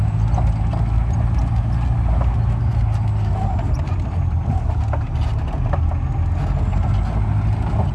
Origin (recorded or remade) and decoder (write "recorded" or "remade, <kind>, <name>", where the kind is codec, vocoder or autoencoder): recorded